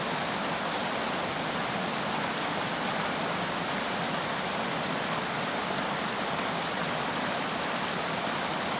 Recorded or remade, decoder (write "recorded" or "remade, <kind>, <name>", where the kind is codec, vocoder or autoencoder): recorded